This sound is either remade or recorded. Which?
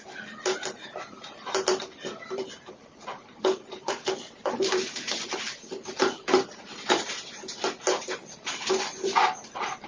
remade